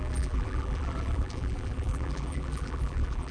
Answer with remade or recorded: remade